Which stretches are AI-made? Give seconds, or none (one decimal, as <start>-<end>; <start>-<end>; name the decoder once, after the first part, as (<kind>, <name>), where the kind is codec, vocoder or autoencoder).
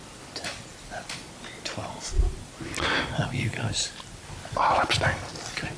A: none